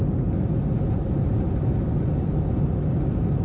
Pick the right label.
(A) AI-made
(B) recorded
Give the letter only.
B